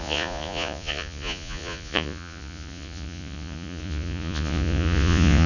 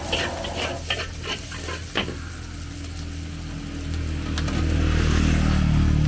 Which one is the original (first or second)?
second